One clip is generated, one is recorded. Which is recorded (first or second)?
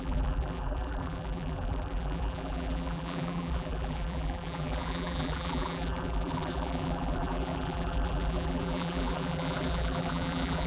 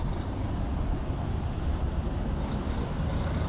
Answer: second